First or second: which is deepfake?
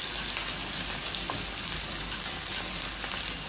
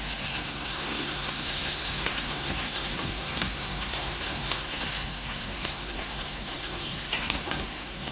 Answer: second